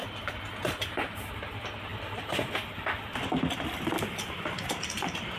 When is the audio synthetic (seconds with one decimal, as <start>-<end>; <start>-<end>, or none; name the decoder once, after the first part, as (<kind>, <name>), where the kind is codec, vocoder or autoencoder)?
1.2-1.9 (vocoder, BigVGAN v2); 4.2-5.4